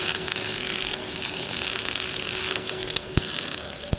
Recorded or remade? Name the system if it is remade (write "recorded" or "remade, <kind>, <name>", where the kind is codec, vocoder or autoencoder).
remade, codec, SNAC